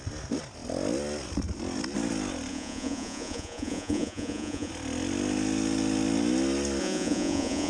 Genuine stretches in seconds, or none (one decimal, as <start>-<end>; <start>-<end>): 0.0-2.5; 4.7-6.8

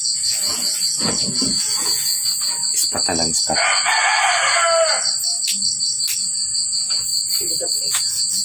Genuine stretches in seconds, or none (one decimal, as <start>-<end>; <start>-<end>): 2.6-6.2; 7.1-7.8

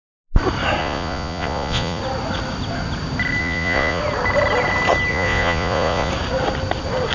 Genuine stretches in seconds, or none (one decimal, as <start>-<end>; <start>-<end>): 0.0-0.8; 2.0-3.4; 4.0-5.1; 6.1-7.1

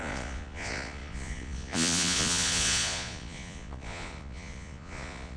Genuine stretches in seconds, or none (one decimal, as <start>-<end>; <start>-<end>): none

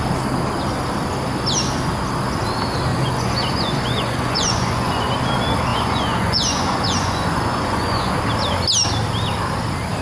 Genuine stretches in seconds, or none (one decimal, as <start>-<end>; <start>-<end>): 0.0-2.9; 5.1-5.7; 8.1-10.0